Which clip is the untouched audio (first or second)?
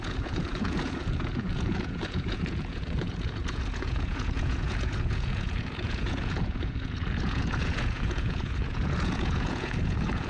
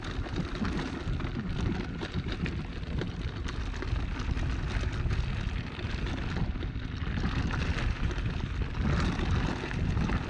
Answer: second